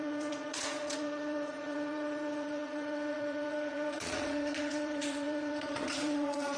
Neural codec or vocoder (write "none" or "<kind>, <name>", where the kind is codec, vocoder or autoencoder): vocoder, Vocos